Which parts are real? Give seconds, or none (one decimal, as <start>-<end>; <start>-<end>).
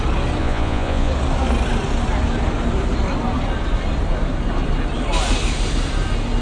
0.0-0.4; 1.1-6.4